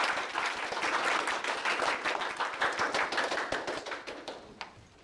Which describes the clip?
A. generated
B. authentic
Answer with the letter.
B